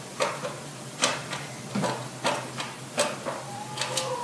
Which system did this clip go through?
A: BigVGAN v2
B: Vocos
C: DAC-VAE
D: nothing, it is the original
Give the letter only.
A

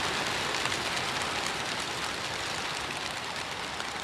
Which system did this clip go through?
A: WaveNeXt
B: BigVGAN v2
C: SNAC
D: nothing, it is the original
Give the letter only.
D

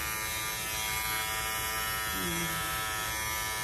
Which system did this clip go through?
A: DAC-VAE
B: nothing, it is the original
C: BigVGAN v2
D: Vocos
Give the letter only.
B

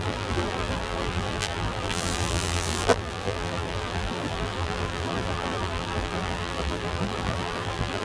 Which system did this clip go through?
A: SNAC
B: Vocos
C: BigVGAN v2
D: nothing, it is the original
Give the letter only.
C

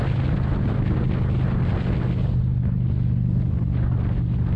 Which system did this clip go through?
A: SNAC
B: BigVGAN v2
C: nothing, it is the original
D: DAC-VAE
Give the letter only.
C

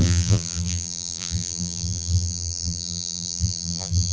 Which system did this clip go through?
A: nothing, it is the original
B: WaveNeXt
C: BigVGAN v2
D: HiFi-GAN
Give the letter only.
C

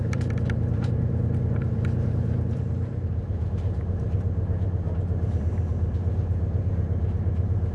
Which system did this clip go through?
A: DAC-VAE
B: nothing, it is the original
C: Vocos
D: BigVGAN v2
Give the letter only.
D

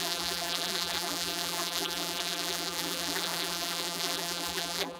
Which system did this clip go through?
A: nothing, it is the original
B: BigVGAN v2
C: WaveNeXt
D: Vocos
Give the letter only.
B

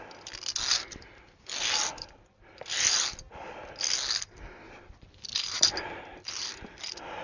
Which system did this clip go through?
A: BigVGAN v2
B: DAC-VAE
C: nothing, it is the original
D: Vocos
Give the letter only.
C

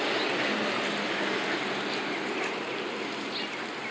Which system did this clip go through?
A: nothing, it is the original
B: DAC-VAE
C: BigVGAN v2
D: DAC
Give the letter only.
A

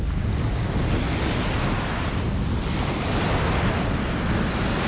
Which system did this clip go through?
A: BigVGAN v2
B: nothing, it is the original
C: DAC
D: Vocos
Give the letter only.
B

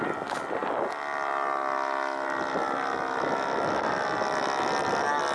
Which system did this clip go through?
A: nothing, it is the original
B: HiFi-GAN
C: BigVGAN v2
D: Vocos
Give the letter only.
A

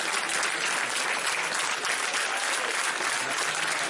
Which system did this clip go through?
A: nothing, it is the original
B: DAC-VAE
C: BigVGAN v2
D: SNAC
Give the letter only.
A